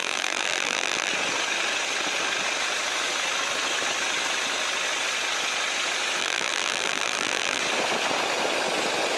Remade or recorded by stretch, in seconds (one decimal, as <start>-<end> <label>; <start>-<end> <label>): 0.0-1.1 remade; 1.1-6.2 recorded; 6.2-7.6 remade; 7.6-9.2 recorded